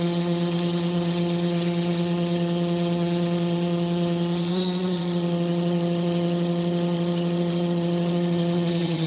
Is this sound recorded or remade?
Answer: remade